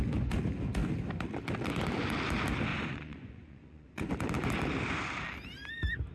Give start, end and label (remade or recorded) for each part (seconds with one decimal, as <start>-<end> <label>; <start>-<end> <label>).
0.0-2.7 recorded; 2.7-4.1 remade; 4.1-6.1 recorded